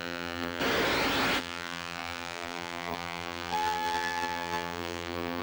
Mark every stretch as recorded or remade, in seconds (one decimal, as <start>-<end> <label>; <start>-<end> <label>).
0.0-0.6 remade; 0.6-1.4 recorded; 1.4-5.4 remade